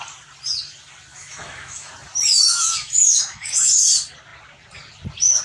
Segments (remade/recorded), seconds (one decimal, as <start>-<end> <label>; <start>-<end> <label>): 0.0-1.1 recorded; 1.1-1.9 remade; 1.9-2.3 recorded; 2.3-3.8 remade; 3.8-5.4 recorded

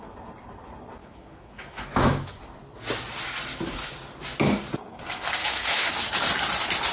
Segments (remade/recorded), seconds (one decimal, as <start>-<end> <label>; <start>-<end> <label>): 0.0-1.0 recorded; 1.0-2.4 remade; 2.4-5.4 recorded; 5.4-5.9 remade; 5.9-6.9 recorded

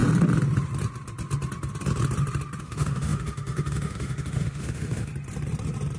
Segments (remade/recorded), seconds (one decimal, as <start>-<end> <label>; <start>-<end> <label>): 0.0-2.6 recorded; 2.6-5.1 remade; 5.1-6.0 recorded